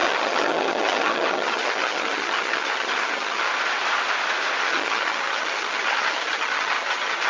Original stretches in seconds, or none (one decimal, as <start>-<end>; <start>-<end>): 3.5-4.6